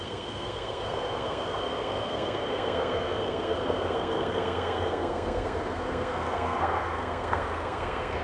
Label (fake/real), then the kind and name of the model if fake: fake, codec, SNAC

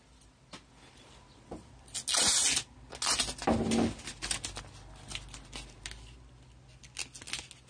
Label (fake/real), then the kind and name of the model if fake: real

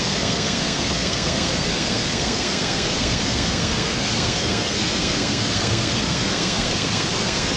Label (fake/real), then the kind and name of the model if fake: fake, codec, SNAC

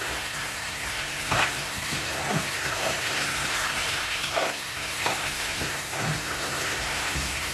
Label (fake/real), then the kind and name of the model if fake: fake, codec, SNAC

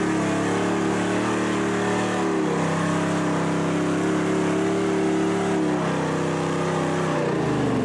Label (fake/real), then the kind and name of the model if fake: real